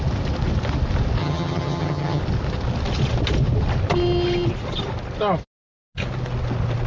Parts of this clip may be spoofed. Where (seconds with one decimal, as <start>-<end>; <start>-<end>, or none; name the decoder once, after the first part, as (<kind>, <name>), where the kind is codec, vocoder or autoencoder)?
1.2-2.2 (vocoder, HiFi-GAN)